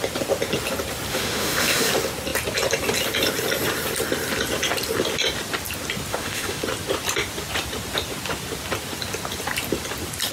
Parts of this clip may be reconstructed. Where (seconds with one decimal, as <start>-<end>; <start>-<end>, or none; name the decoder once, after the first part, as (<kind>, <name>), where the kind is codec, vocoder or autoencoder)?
1.1-1.9 (autoencoder, DAC-VAE); 6.1-6.6